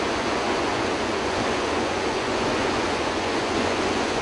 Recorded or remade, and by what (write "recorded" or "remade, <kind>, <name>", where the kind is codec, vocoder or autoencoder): remade, vocoder, Vocos